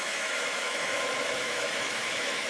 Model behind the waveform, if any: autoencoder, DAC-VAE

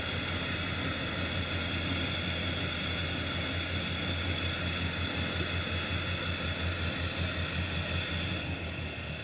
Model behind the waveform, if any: none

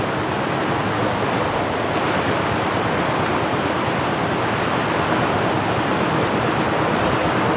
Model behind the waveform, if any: none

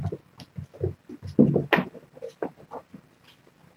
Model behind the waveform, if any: none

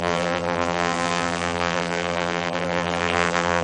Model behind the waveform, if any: vocoder, BigVGAN v2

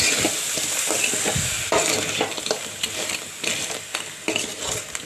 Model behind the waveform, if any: none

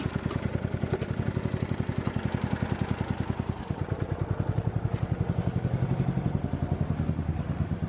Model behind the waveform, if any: none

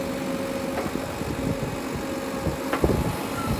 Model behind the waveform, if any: none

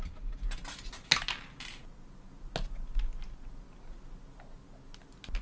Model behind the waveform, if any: none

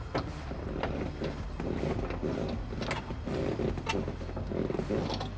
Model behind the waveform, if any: none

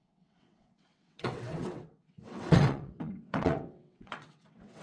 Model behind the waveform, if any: vocoder, WaveNeXt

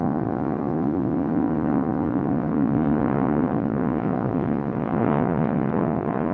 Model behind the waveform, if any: vocoder, Vocos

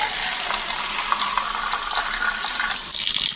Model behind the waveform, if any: none